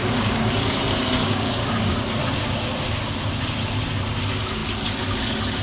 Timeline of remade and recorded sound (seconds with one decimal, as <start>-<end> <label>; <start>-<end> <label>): 0.0-0.6 remade; 0.6-1.2 recorded; 1.2-2.0 remade; 2.0-5.6 recorded